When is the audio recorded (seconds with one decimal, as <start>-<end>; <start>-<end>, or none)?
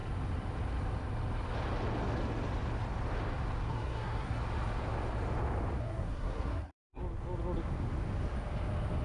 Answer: 0.0-3.7; 4.4-5.8; 7.0-9.0